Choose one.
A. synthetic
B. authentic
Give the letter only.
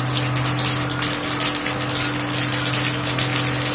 B